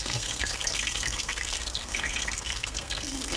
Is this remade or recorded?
remade